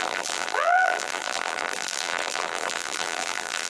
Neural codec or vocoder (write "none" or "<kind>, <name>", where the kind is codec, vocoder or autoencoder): vocoder, BigVGAN v2